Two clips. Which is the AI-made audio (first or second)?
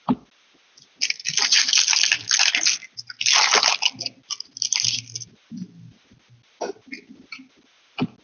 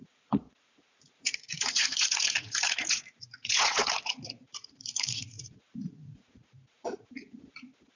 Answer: second